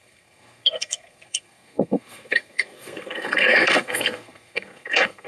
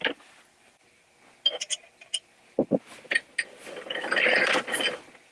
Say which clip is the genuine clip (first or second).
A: second